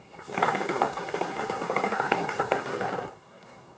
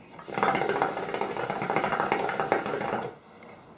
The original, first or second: second